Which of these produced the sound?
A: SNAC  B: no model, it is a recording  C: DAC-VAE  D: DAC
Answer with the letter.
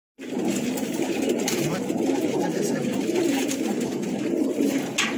B